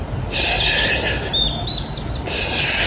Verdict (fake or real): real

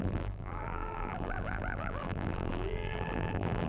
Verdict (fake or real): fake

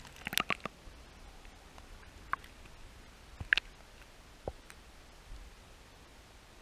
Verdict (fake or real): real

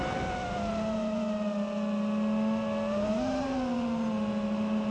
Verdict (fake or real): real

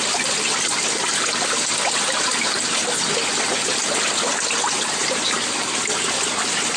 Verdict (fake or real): real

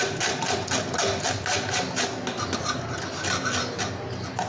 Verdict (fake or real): real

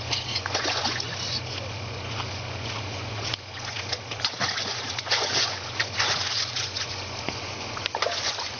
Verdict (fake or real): fake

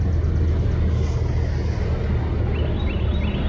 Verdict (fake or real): real